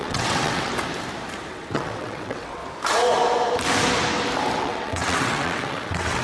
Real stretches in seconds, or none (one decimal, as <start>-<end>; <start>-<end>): 0.7-1.5; 2.6-4.6